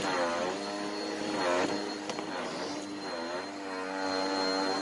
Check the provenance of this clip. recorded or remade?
recorded